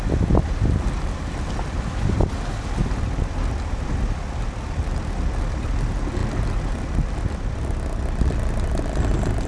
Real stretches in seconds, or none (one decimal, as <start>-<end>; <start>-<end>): 0.0-9.5